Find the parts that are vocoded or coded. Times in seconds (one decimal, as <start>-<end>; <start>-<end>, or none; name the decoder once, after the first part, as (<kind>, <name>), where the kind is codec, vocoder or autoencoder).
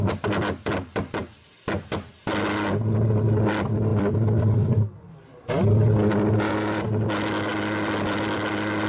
3.9-5.5 (vocoder, BigVGAN v2); 7.5-8.5